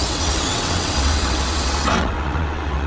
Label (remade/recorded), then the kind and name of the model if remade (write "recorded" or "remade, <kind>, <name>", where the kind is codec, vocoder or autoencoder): remade, vocoder, WaveNeXt